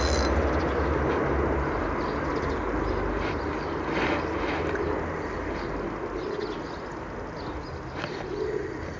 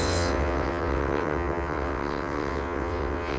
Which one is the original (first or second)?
first